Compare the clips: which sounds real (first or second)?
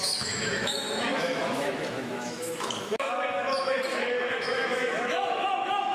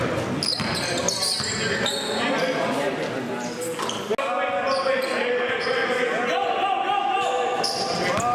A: second